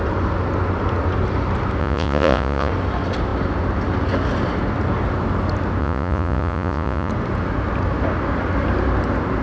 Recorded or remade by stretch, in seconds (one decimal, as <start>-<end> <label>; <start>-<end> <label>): 0.0-1.8 recorded; 1.8-2.7 remade; 2.7-5.8 recorded; 5.8-7.1 remade; 7.1-9.4 recorded

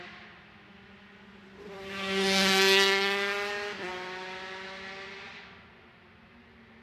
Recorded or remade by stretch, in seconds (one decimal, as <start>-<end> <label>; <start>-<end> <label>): 0.0-6.8 recorded

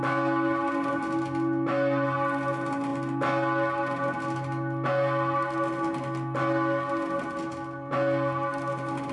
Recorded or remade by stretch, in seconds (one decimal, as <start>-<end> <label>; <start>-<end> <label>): 0.0-9.1 recorded

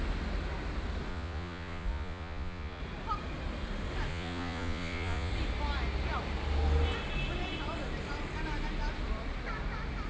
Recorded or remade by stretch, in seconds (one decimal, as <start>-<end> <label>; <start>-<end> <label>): 0.0-1.1 recorded; 1.1-2.8 remade; 2.8-4.1 recorded; 4.1-5.3 remade; 5.3-10.1 recorded